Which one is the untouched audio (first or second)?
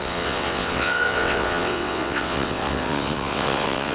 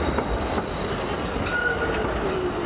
second